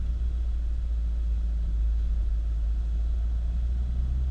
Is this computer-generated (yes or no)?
no